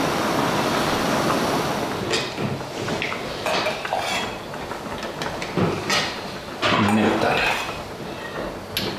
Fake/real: real